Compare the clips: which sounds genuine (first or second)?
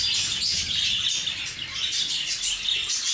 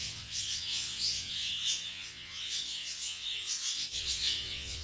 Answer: first